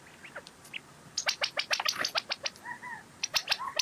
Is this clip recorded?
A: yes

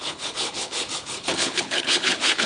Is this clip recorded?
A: no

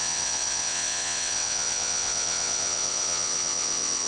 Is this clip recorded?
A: no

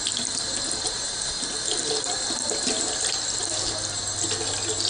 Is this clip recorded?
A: yes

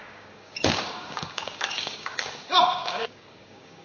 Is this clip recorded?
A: no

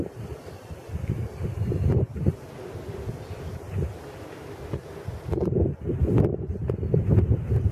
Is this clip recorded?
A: yes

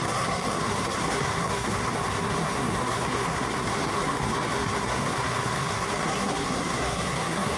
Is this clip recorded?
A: no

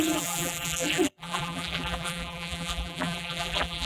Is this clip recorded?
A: no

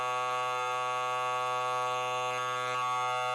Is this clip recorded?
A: yes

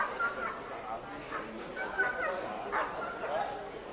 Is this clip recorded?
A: yes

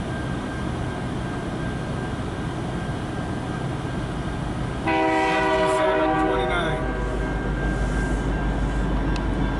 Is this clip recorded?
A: yes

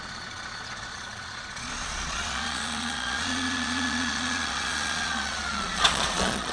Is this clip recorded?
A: no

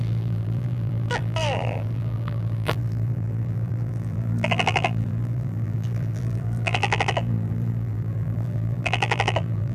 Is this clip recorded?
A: no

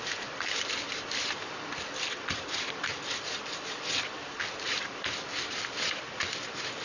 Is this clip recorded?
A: no